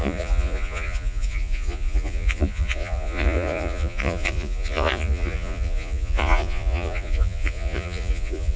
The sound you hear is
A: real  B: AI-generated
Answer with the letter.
B